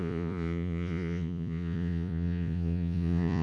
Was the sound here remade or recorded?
remade